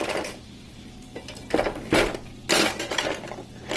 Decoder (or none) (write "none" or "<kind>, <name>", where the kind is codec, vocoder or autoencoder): none